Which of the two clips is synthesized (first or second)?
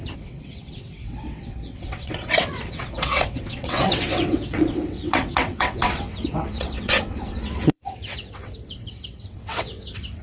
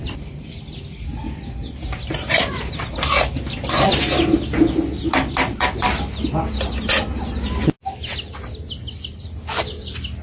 first